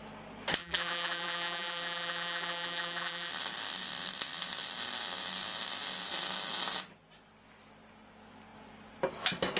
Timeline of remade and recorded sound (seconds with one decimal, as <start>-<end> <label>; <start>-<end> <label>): 0.0-0.6 recorded; 0.6-3.3 remade; 3.3-9.6 recorded